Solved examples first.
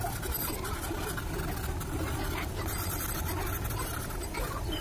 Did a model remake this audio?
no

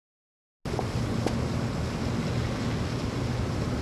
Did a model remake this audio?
no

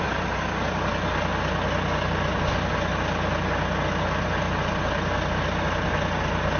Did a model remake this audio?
no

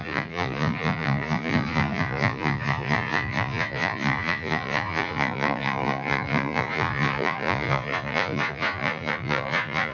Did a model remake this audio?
yes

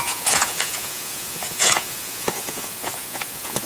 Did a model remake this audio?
yes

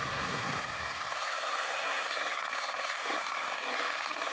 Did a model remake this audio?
yes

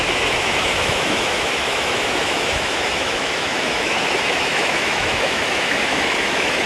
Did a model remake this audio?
yes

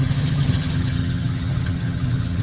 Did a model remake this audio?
yes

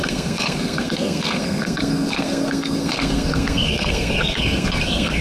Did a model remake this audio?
yes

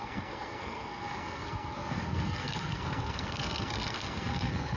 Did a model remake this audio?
yes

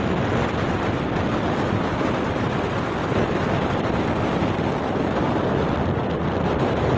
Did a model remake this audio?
no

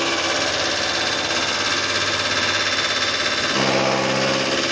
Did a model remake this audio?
no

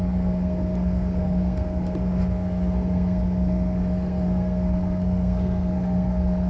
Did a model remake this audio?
yes